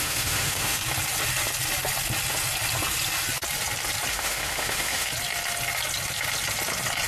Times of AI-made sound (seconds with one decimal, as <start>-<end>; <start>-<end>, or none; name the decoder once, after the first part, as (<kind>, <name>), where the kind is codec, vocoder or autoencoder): 0.0-0.8 (autoencoder, DAC-VAE); 4.1-5.1